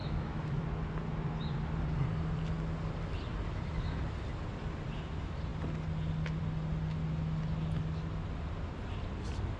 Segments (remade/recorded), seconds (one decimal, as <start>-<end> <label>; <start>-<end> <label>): 0.0-0.6 remade; 0.6-9.6 recorded